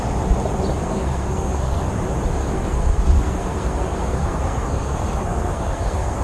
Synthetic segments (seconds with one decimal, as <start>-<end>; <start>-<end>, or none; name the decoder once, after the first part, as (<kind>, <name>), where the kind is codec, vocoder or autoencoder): 0.8-1.9 (codec, SNAC); 2.4-6.2